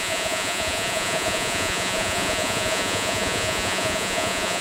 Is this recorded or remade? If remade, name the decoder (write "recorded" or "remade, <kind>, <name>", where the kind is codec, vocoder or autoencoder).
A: remade, vocoder, Vocos